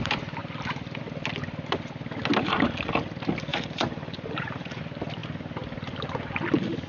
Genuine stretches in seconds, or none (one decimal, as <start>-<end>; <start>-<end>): 0.0-3.5; 4.8-6.9